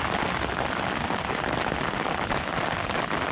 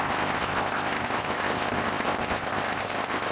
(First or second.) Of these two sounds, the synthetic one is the second